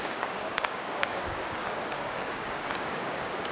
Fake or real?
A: fake